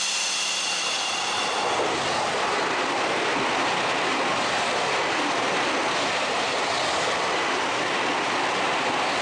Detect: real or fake real